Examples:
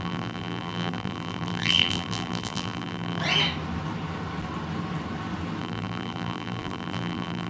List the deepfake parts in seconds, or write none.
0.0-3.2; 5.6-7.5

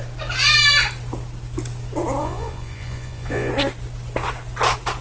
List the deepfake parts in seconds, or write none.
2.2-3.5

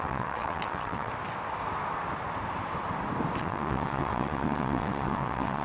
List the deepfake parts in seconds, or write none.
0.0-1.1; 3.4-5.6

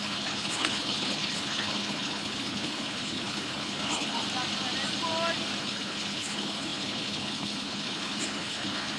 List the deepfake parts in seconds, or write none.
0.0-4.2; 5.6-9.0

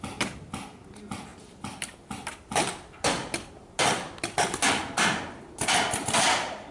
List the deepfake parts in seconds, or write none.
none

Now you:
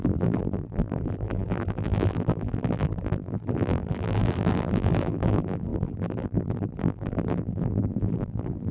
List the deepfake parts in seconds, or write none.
0.0-8.7

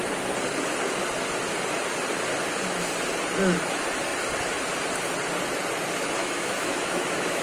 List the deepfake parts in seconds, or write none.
6.2-7.4